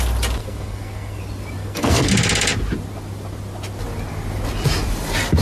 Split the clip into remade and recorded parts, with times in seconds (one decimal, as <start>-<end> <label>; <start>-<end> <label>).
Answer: 0.0-0.4 recorded; 0.4-1.2 remade; 1.2-1.6 recorded; 1.6-2.1 remade; 2.1-5.4 recorded